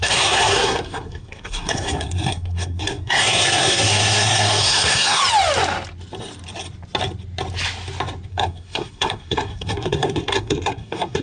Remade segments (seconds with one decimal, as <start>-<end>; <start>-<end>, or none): 0.0-5.2; 8.3-11.2